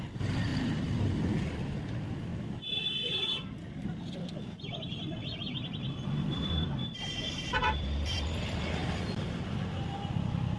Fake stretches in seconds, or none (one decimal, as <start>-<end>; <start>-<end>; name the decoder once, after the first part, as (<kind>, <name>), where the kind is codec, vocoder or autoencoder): 0.0-0.5 (vocoder, BigVGAN v2); 1.4-10.6